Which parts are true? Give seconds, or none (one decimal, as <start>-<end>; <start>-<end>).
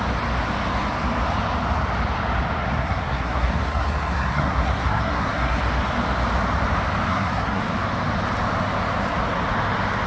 0.0-2.6; 5.6-7.1; 7.6-10.1